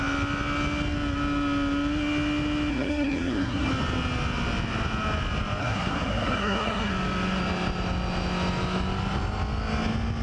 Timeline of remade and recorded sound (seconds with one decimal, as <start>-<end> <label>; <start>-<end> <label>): 0.0-2.7 recorded; 2.7-3.7 remade; 3.7-5.6 recorded; 5.6-6.9 remade; 6.9-10.2 recorded